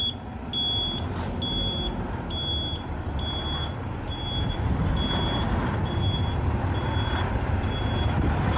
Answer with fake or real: real